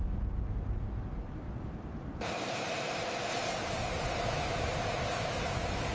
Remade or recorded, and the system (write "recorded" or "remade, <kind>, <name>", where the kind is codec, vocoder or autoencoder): recorded